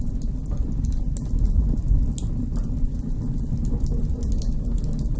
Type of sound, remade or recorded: recorded